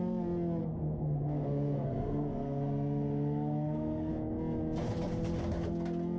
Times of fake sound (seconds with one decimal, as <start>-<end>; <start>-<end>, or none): 0.6-4.1